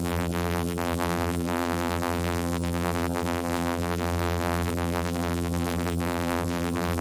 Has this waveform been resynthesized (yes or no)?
yes